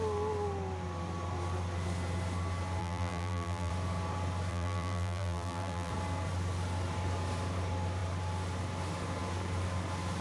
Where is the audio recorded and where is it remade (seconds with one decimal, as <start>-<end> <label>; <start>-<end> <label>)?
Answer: 0.0-2.8 recorded; 2.8-3.7 remade; 3.7-4.5 recorded; 4.5-5.9 remade; 5.9-10.2 recorded